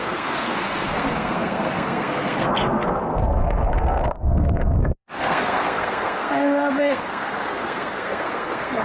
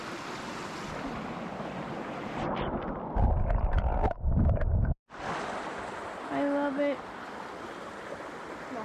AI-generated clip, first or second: first